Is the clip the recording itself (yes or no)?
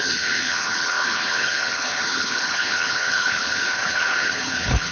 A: no